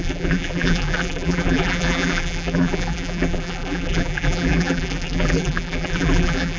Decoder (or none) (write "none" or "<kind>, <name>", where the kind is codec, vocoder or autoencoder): vocoder, BigVGAN v2